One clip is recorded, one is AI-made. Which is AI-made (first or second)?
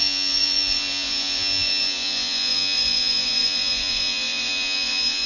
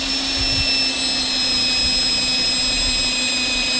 first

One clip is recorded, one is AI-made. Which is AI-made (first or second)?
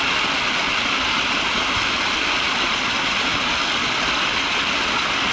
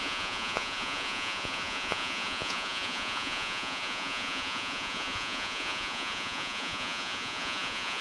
second